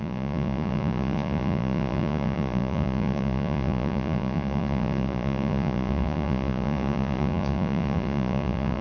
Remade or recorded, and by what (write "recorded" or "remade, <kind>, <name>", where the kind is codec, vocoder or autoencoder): remade, vocoder, Vocos